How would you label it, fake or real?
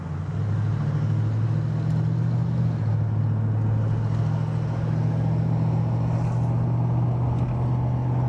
real